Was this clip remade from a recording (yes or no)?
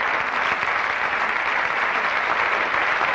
no